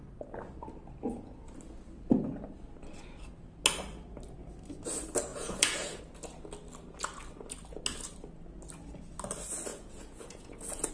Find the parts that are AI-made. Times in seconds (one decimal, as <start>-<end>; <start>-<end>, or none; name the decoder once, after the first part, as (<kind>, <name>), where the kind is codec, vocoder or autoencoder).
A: 5.3-6.0 (vocoder, Vocos); 9.7-10.9